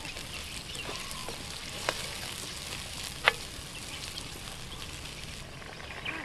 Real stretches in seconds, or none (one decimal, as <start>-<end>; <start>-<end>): 0.0-6.2